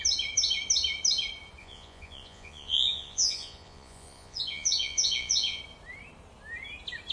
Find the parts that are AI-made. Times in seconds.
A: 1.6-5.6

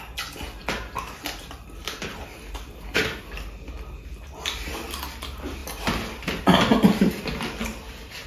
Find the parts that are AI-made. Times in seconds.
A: 0.6-2.0

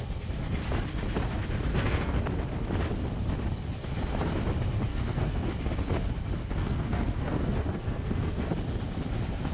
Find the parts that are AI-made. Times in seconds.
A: 1.7-2.2; 4.9-5.5; 6.4-8.5

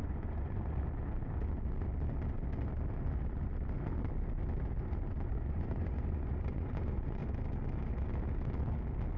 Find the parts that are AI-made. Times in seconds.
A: 0.0-0.6; 5.3-7.2

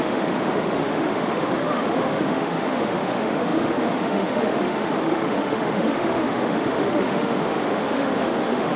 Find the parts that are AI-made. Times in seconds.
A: 0.0-8.8

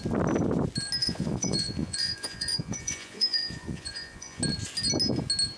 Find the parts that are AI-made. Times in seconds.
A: 1.0-4.4

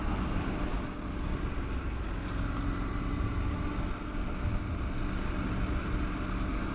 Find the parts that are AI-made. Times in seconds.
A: none

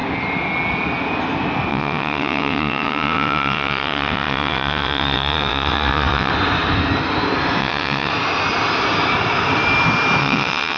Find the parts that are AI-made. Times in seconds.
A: 1.7-6.3; 7.6-8.1; 10.2-10.8